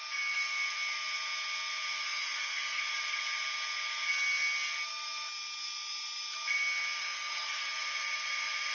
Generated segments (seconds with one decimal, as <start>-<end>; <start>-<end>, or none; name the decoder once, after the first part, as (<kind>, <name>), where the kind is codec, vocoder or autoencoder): 2.0-2.8 (codec, SNAC); 7.0-7.7